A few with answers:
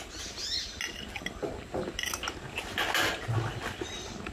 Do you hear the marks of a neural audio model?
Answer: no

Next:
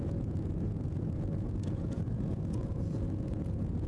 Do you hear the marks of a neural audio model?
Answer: yes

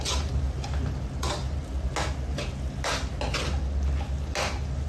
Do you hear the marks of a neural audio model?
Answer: no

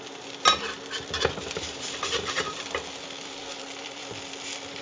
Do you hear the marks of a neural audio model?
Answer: yes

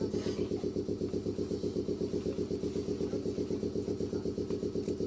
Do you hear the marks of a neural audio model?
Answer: no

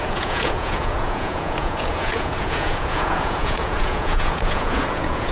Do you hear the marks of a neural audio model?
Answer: yes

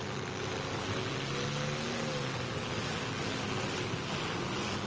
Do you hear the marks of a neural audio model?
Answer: no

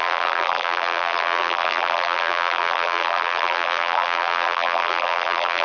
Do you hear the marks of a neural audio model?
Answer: yes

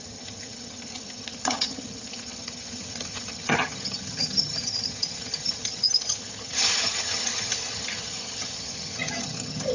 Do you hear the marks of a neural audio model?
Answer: yes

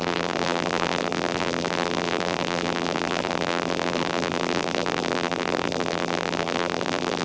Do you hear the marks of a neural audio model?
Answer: yes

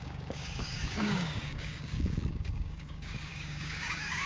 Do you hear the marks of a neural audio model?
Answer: yes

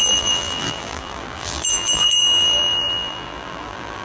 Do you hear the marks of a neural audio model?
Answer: yes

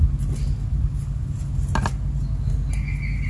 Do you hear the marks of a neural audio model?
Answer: no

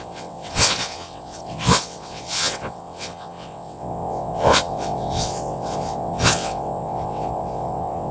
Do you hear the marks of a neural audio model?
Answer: yes